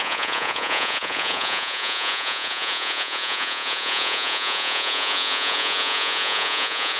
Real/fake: fake